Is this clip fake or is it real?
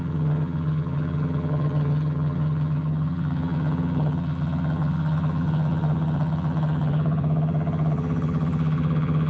fake